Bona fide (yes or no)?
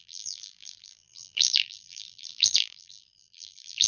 no